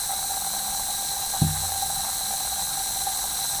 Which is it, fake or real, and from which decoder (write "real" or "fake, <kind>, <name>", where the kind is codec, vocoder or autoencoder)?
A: real